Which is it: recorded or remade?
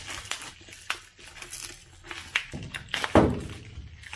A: recorded